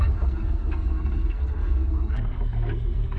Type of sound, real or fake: fake